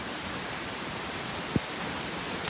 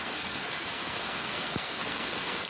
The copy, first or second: second